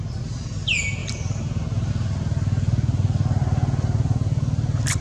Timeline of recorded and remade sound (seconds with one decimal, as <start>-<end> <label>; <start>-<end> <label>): 0.0-1.0 recorded; 1.0-1.9 remade; 1.9-5.0 recorded